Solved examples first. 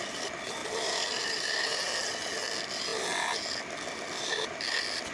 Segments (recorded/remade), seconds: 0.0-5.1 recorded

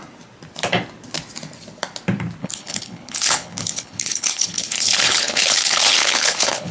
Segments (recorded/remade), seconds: 0.0-2.4 recorded; 2.4-6.7 remade

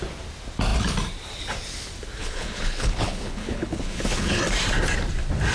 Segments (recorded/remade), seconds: 0.0-2.2 recorded; 2.2-4.4 remade; 4.4-5.5 recorded

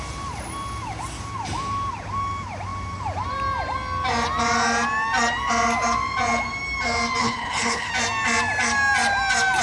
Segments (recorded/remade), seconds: 0.0-7.2 recorded; 7.2-7.9 remade; 7.9-9.6 recorded

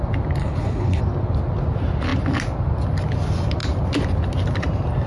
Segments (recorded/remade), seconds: 0.0-0.4 recorded; 0.4-1.0 remade; 1.0-5.1 recorded

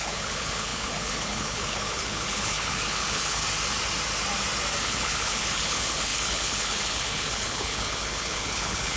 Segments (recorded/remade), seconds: 0.0-3.4 remade; 3.4-4.8 recorded; 4.8-9.0 remade

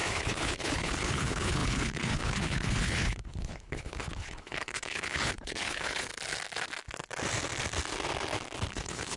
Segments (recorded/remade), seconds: 0.0-6.1 remade; 6.1-8.7 recorded; 8.7-9.2 remade